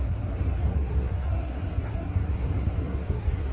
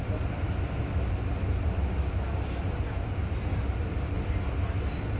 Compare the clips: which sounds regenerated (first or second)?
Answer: first